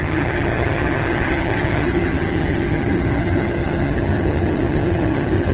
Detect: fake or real fake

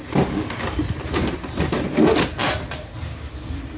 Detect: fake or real real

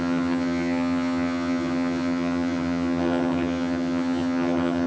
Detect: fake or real fake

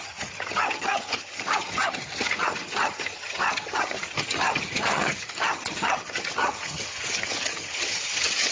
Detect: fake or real fake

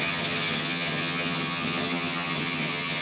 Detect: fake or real fake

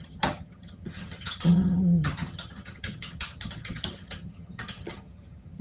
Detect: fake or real fake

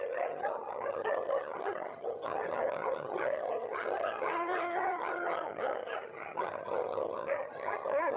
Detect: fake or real fake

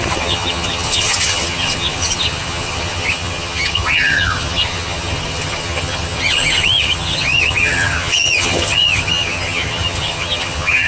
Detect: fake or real fake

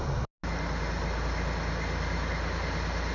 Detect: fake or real real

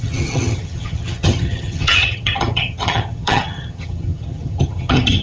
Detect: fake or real fake